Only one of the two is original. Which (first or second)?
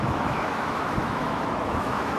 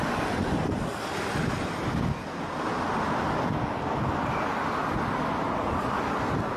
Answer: second